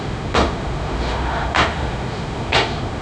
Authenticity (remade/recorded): remade